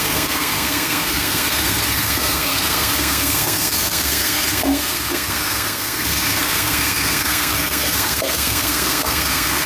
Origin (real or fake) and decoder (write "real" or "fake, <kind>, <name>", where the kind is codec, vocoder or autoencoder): fake, codec, SNAC